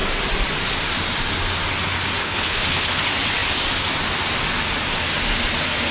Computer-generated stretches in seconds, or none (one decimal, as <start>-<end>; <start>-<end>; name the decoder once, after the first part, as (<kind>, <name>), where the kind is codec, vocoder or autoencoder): 2.2-3.0 (codec, HILCodec)